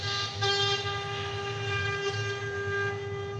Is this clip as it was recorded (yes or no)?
yes